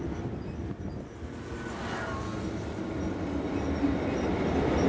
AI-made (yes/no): no